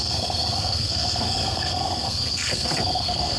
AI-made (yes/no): yes